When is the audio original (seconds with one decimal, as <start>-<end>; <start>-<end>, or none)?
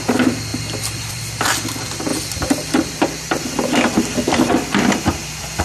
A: 0.0-0.5; 1.2-2.1; 4.5-5.6